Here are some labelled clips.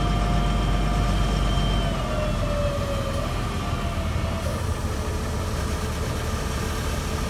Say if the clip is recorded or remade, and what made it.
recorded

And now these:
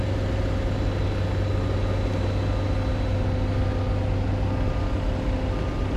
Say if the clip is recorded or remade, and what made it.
recorded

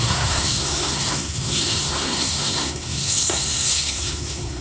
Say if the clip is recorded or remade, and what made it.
remade, codec, SNAC